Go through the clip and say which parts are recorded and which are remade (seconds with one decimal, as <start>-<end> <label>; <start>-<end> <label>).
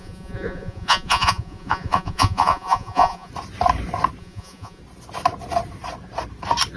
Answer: 0.0-3.3 remade; 3.3-4.2 recorded; 4.2-4.8 remade; 4.8-6.8 recorded